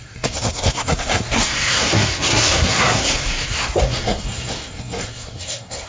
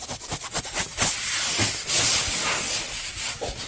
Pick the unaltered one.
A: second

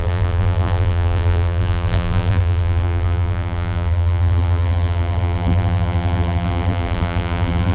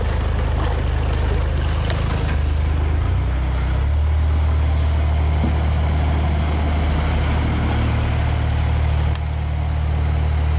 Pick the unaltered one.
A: second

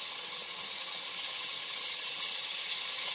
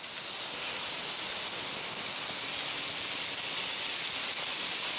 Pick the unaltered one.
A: second